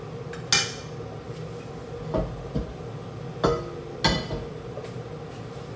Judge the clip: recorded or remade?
recorded